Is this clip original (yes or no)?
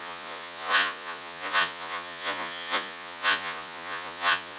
no